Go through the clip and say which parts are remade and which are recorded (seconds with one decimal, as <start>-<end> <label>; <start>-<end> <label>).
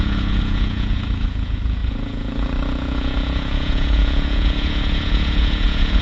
0.0-6.0 remade